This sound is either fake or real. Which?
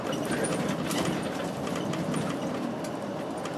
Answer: real